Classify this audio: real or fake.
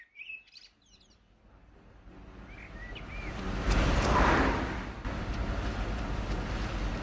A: real